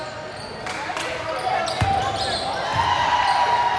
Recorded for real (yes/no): yes